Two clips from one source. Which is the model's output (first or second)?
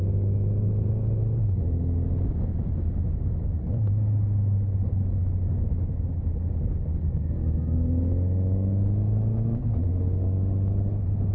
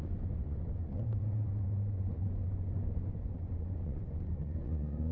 second